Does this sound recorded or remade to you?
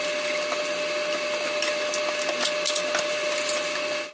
recorded